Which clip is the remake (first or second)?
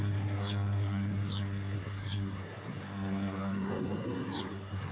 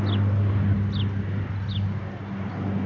first